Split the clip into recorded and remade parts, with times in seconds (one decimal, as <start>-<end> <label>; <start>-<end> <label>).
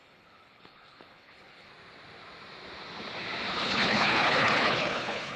0.0-1.7 remade; 1.7-3.5 recorded; 3.5-5.4 remade